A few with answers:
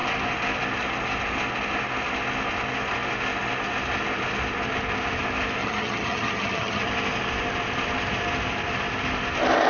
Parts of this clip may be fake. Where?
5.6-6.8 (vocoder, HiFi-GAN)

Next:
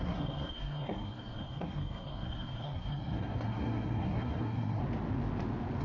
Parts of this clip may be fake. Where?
0.0-4.8 (codec, SNAC)

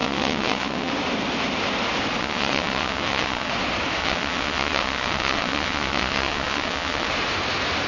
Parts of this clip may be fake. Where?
0.0-0.9 (vocoder, WaveNeXt); 2.2-3.5; 4.0-7.1